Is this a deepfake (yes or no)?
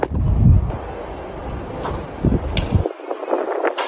no